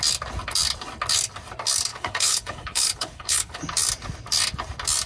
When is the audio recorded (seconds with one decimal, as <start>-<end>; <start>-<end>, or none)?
0.0-1.9; 3.6-5.1